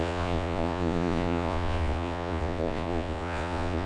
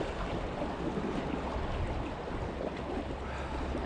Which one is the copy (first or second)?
first